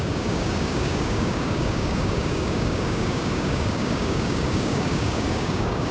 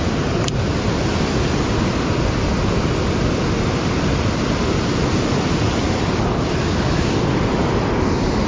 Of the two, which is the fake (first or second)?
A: first